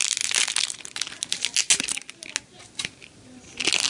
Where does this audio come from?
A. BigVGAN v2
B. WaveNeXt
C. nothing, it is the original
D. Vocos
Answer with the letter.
C